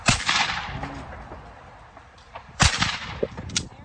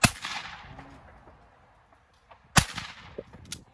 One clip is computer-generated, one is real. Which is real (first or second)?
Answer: second